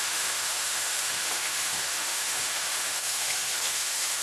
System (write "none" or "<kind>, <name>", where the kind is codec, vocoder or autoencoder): autoencoder, DAC-VAE